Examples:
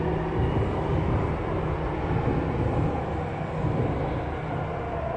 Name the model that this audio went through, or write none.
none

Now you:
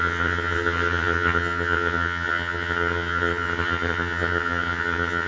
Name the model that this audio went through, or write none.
vocoder, HiFi-GAN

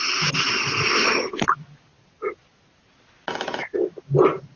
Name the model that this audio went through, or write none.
none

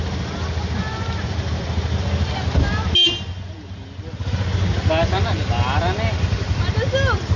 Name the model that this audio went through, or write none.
none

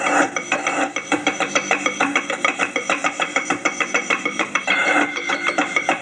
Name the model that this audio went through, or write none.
vocoder, BigVGAN v2